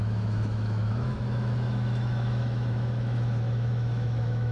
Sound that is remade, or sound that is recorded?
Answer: remade